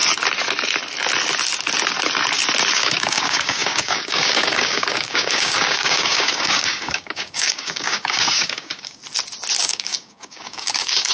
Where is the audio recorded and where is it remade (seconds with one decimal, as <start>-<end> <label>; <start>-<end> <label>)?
0.0-2.7 recorded; 2.7-9.0 remade; 9.0-9.6 recorded; 9.6-11.1 remade